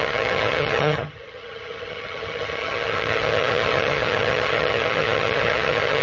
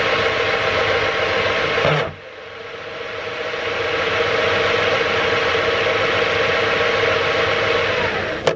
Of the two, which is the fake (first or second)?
first